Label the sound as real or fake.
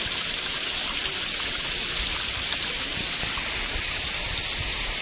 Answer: real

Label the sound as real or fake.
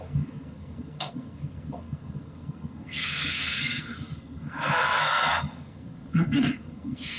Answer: fake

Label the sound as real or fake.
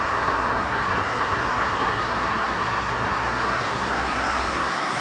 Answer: fake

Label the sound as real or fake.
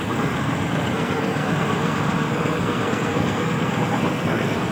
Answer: fake